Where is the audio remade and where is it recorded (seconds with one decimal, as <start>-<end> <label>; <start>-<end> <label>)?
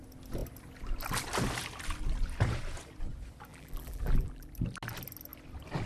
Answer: 0.0-3.5 recorded; 3.5-4.5 remade; 4.5-5.9 recorded